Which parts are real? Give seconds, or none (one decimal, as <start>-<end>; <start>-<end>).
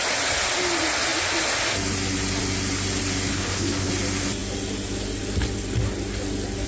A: 0.0-3.3; 3.9-6.7